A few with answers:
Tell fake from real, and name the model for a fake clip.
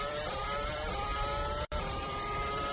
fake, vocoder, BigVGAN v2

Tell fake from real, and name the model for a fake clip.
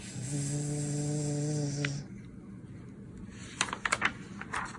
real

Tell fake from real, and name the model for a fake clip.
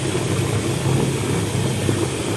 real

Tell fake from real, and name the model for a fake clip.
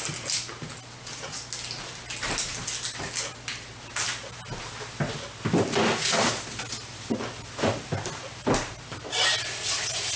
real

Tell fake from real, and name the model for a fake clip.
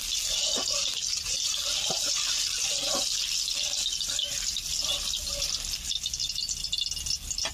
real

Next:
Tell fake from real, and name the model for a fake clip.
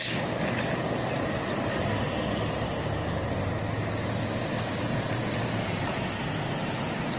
real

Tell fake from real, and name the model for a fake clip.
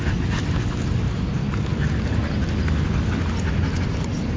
real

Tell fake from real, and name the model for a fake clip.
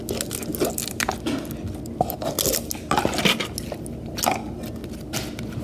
real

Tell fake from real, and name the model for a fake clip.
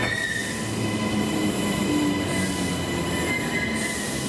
real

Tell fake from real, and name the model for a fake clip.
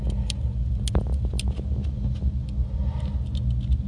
real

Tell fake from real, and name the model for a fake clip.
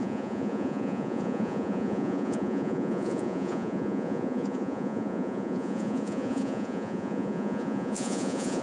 fake, vocoder, Vocos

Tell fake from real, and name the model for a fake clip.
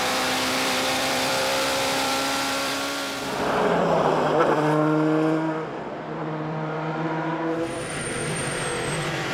fake, vocoder, BigVGAN v2